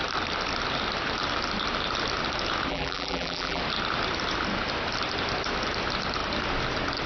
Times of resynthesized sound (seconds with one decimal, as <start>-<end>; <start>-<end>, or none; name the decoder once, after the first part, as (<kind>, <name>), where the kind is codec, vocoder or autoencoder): 2.7-3.6 (vocoder, BigVGAN v2)